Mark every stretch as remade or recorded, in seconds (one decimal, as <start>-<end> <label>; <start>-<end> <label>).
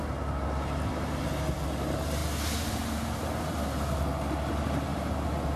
0.0-5.6 recorded